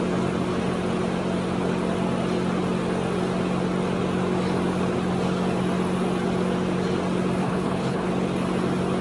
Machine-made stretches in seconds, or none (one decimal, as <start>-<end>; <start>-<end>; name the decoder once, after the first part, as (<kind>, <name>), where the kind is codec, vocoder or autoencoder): 7.4-8.1 (codec, HILCodec)